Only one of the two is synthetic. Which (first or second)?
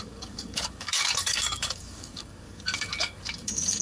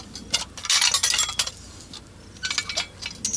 first